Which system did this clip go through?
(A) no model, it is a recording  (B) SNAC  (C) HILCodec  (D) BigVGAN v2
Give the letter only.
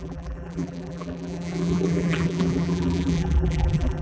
D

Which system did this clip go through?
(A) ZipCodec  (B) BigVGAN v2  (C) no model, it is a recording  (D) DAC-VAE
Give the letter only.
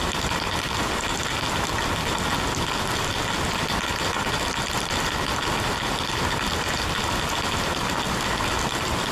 C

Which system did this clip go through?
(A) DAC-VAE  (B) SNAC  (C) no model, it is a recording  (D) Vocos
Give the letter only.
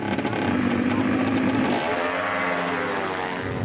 C